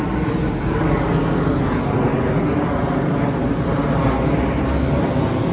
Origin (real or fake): real